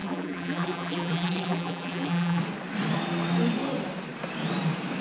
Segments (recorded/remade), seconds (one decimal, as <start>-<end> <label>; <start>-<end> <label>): 0.0-2.4 remade; 2.4-5.0 recorded